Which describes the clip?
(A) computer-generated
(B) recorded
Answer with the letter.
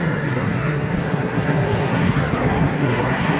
A